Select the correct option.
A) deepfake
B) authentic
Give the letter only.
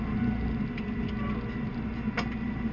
B